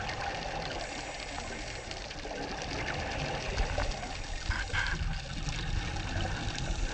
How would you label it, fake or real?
real